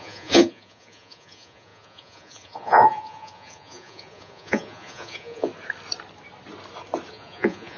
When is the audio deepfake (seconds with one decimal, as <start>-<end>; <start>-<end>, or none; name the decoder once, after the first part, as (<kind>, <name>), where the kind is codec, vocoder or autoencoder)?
0.0-5.5 (vocoder, Vocos); 7.1-7.8